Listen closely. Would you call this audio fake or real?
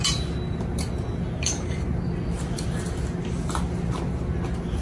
real